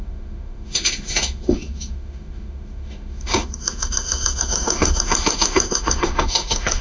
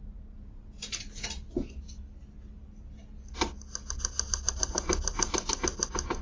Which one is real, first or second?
second